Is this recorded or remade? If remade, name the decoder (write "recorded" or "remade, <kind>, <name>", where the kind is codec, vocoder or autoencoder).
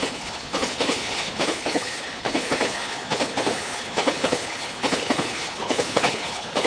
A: remade, codec, HILCodec